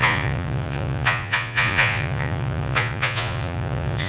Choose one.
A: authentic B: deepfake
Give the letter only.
B